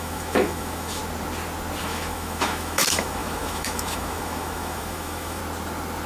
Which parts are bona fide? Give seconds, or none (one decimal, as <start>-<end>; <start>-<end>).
1.0-1.8; 5.4-6.1